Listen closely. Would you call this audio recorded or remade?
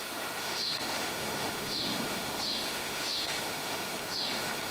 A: remade